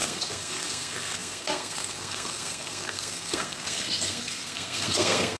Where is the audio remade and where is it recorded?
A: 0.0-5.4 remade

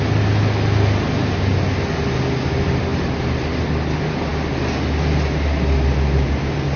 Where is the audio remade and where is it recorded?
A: 0.0-6.8 recorded

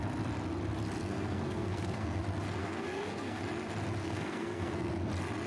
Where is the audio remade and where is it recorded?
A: 0.0-1.0 recorded; 1.0-2.2 remade; 2.2-2.6 recorded; 2.6-3.4 remade; 3.4-4.0 recorded; 4.0-4.9 remade; 4.9-5.5 recorded